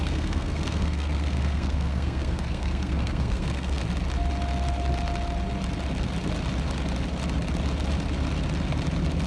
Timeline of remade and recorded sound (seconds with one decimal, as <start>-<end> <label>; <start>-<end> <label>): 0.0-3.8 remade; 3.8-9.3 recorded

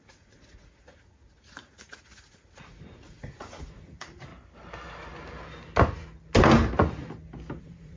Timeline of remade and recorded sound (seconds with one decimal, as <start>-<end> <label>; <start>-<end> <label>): 0.0-4.3 remade; 4.3-7.6 recorded; 7.6-8.0 remade

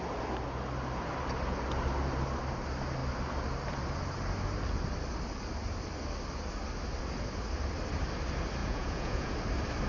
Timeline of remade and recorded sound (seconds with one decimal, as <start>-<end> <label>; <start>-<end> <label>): 0.0-8.6 recorded; 8.6-9.3 remade; 9.3-9.9 recorded

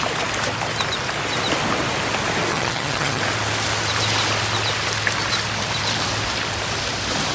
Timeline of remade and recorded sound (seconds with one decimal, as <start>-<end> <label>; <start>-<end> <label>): 0.0-2.5 recorded; 2.5-3.2 remade; 3.2-7.3 recorded

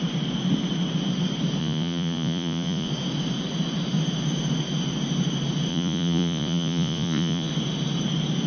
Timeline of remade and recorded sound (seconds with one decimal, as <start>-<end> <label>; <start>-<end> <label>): 0.0-1.6 recorded; 1.6-2.9 remade; 2.9-5.7 recorded; 5.7-7.5 remade; 7.5-8.5 recorded

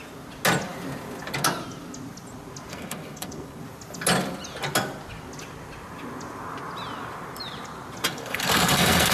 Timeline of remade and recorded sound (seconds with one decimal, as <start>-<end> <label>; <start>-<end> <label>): 0.0-2.7 recorded; 2.7-3.6 remade; 3.6-8.1 recorded; 8.1-9.1 remade